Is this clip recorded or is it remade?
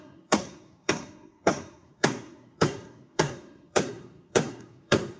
remade